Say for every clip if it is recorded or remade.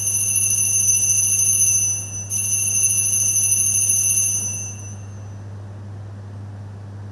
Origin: recorded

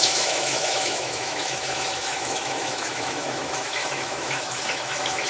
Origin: remade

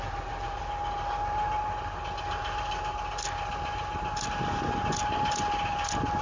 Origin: recorded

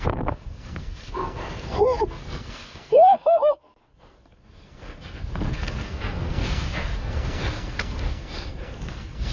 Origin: remade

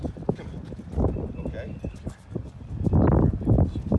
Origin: recorded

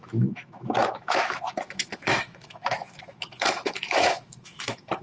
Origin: remade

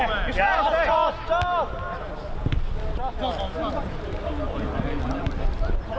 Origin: recorded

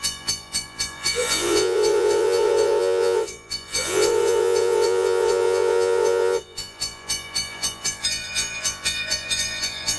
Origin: remade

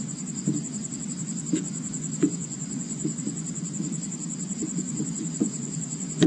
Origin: remade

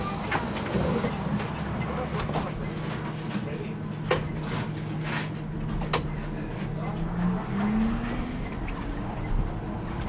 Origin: recorded